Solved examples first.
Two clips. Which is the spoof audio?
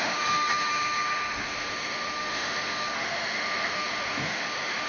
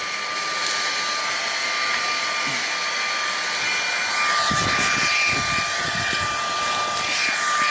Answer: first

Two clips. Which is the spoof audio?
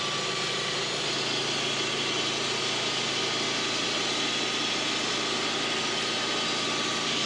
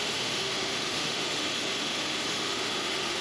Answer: second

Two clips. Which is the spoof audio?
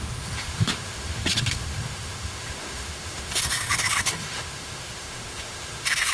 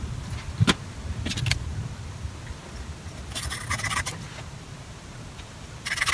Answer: first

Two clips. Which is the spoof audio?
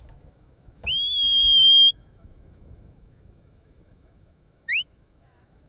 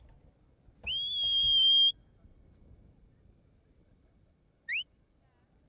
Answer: first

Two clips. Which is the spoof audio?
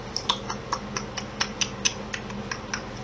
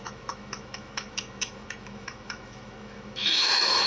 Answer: second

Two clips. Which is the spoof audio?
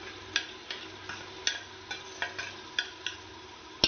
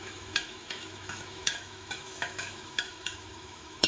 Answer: second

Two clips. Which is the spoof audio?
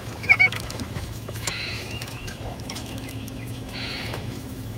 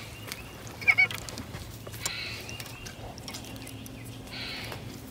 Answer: first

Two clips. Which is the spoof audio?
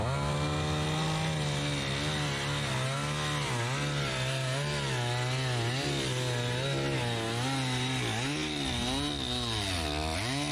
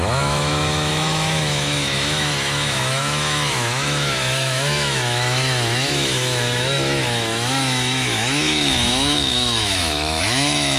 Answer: second